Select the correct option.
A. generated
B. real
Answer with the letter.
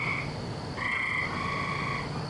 B